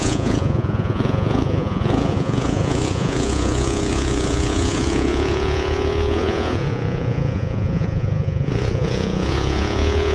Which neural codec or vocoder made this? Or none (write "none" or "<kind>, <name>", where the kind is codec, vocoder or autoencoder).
vocoder, Vocos